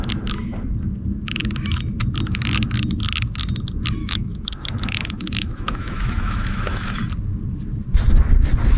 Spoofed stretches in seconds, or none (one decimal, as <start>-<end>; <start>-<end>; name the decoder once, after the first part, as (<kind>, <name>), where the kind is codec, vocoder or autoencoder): 4.0-7.0 (autoencoder, DAC-VAE)